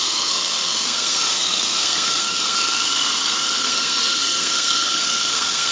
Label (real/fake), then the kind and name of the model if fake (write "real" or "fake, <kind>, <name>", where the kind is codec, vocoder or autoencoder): fake, codec, SNAC